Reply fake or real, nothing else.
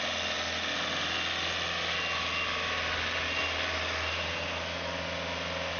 real